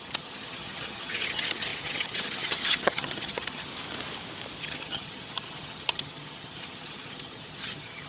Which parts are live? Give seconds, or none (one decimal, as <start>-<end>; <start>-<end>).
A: 3.7-4.6

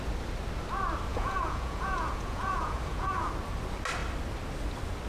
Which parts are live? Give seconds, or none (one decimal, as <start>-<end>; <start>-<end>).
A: 0.0-1.1; 3.3-5.1

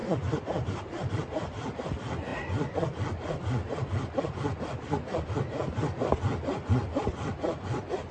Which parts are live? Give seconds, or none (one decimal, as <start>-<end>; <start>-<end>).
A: 1.1-8.1

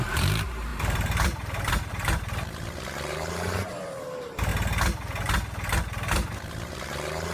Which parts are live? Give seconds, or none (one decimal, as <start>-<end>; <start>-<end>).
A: 4.5-6.5

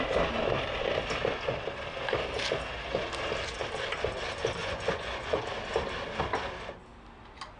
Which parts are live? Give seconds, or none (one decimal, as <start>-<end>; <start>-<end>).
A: 0.0-4.6; 5.4-7.6